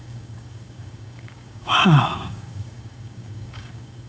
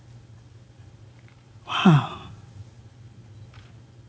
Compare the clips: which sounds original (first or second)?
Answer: second